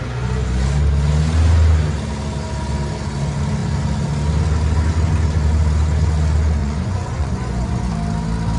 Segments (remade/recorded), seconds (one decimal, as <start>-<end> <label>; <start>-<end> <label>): 0.0-6.6 recorded; 6.6-7.9 remade; 7.9-8.6 recorded